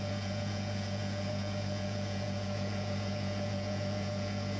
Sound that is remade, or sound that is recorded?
remade